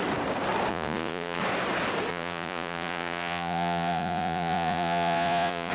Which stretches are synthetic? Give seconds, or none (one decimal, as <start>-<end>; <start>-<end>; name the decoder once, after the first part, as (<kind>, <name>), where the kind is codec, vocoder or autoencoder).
0.7-1.4 (vocoder, Vocos); 2.1-5.7